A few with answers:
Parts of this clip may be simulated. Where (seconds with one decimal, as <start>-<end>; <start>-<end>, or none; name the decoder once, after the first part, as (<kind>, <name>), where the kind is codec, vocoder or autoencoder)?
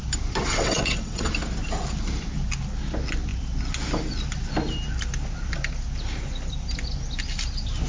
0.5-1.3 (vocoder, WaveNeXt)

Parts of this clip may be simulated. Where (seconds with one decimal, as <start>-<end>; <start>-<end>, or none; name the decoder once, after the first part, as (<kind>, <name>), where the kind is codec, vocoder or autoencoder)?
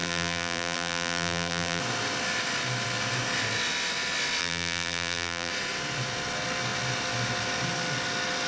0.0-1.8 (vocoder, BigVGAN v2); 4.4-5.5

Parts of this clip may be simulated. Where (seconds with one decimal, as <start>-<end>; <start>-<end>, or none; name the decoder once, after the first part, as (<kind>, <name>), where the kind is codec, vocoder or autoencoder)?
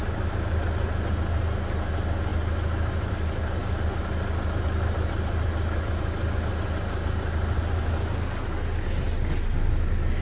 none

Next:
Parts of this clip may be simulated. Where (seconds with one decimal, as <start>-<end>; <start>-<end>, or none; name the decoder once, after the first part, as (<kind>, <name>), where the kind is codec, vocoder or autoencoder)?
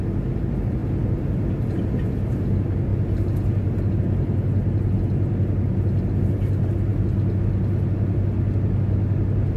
none